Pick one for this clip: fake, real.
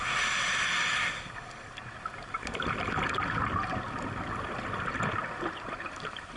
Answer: real